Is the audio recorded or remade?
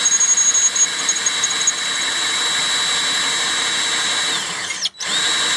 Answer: recorded